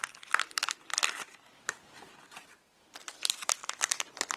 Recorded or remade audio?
recorded